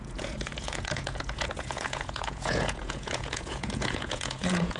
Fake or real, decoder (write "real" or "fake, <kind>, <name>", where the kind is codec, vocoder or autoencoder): fake, vocoder, Vocos